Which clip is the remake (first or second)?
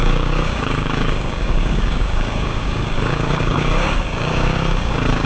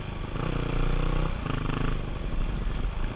first